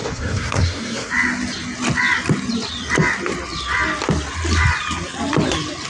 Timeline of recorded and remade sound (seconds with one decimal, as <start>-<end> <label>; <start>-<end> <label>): 0.0-1.1 remade; 1.1-5.9 recorded